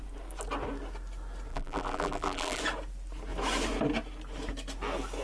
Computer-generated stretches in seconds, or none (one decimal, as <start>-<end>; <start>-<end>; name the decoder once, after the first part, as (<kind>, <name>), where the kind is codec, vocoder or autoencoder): 1.5-2.6 (vocoder, BigVGAN v2)